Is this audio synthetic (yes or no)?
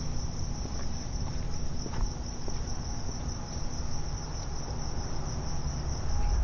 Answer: no